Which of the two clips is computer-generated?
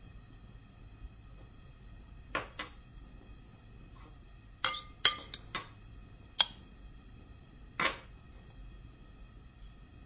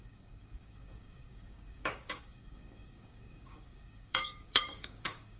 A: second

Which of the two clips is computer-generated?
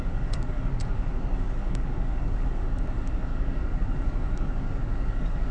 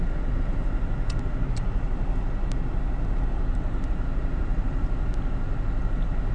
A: first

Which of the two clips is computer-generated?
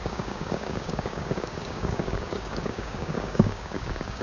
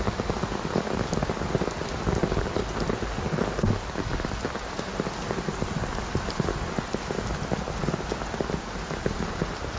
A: first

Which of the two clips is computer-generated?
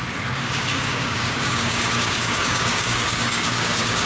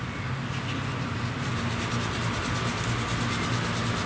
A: first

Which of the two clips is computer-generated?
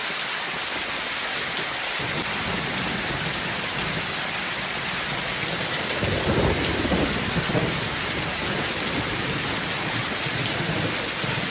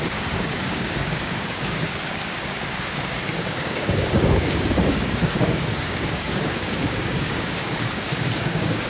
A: second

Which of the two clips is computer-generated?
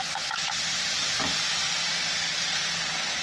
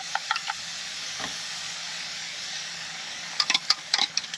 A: second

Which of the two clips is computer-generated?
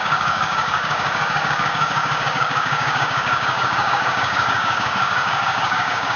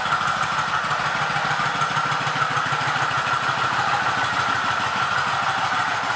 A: first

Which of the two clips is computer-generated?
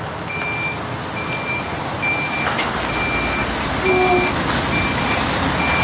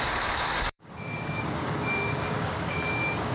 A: second